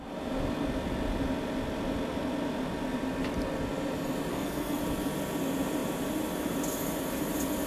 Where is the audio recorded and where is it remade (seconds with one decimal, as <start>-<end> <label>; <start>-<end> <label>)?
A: 0.0-4.3 recorded; 4.3-4.8 remade; 4.8-7.7 recorded